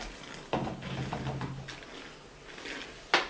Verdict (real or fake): real